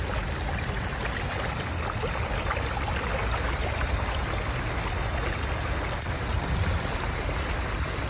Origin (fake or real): real